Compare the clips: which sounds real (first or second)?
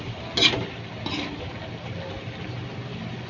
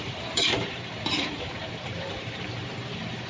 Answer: first